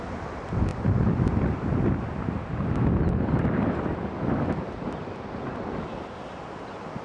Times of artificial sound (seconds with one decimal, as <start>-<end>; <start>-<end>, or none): none